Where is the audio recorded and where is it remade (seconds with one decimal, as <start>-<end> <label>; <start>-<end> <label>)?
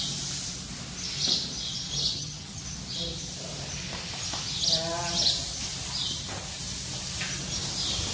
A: 0.0-2.1 recorded; 2.1-2.6 remade; 2.6-8.1 recorded